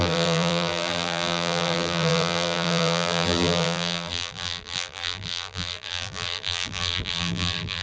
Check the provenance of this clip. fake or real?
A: fake